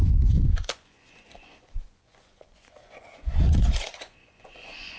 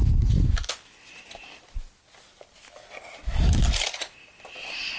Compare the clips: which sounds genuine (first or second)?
second